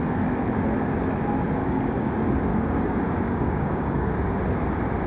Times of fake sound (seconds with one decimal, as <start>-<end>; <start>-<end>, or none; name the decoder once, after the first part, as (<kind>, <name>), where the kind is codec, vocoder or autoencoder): 1.6-2.1 (codec, DAC); 2.5-4.1